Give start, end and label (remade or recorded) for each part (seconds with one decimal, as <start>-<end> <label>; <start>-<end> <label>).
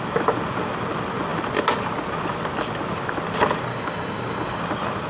0.0-3.7 recorded; 3.7-4.6 remade; 4.6-5.1 recorded